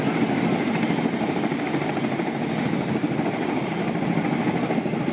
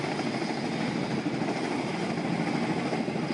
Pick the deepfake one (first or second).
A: first